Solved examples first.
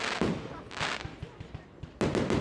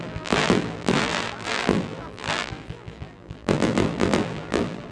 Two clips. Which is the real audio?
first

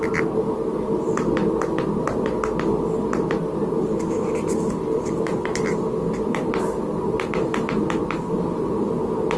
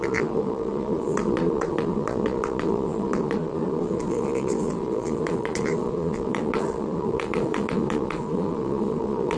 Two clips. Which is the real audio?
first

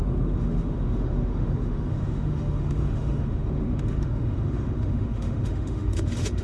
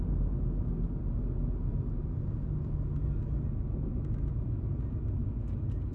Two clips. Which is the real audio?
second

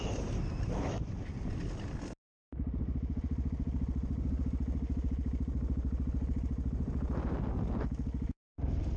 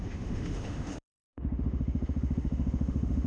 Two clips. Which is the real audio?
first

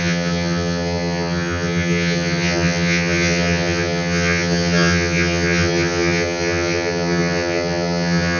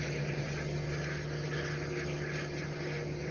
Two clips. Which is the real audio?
second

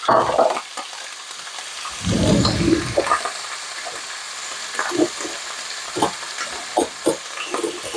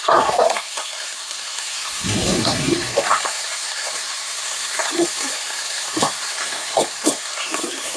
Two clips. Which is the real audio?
first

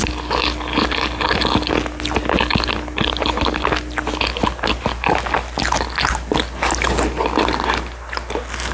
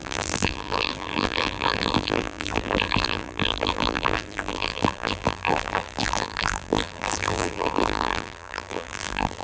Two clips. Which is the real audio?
first